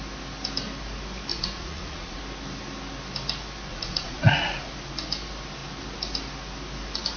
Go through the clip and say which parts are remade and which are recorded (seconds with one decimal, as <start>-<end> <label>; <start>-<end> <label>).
0.0-1.3 recorded; 1.3-2.2 remade; 2.2-3.7 recorded; 3.7-4.6 remade; 4.6-7.2 recorded

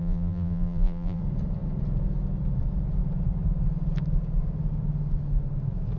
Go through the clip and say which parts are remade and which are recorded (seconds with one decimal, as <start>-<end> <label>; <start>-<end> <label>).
0.0-1.2 remade; 1.2-6.0 recorded

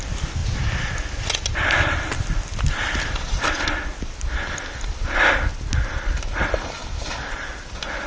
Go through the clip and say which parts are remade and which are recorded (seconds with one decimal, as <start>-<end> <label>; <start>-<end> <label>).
0.0-8.1 recorded

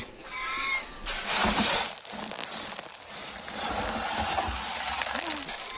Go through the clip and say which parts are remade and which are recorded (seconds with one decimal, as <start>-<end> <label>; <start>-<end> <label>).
0.0-5.8 recorded

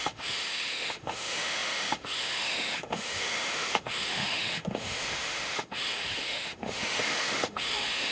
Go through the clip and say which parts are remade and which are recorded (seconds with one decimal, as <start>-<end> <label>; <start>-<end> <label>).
0.0-8.1 remade

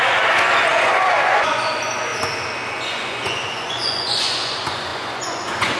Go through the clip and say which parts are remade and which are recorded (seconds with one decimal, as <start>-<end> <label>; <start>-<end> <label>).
0.0-2.1 remade; 2.1-2.7 recorded; 2.7-5.8 remade

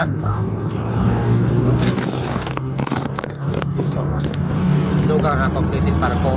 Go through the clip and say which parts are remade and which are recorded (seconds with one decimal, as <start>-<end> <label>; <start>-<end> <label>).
0.0-4.9 remade; 4.9-6.4 recorded